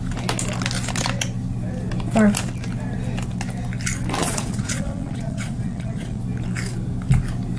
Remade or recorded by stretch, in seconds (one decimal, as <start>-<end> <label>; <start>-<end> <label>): 0.0-4.2 recorded; 4.2-6.2 remade; 6.2-7.6 recorded